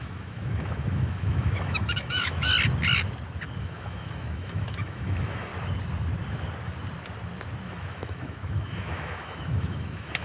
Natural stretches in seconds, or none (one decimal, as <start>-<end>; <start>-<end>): 2.5-3.6; 5.5-7.7